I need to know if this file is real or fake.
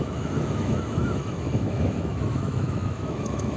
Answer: fake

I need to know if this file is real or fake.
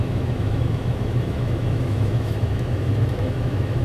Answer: fake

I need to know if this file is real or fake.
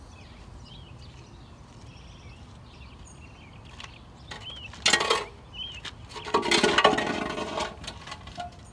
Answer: real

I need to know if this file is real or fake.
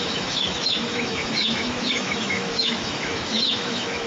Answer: fake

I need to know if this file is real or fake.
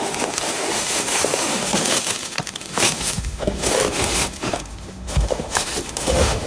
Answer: fake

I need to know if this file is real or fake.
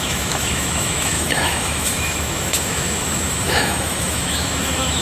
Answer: fake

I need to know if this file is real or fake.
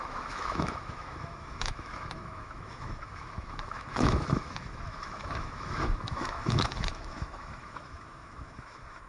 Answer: fake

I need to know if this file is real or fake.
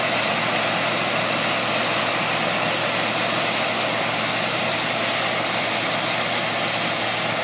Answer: real